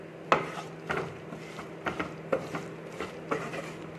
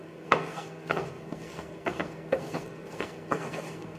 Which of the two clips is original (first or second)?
first